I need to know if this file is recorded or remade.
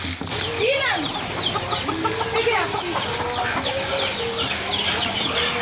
recorded